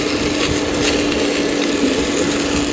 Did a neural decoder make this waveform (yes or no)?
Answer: no